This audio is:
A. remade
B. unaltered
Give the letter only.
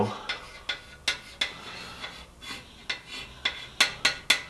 B